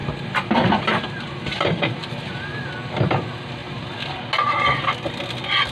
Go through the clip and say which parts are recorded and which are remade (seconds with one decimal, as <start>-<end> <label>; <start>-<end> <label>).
0.0-2.3 remade; 2.3-5.7 recorded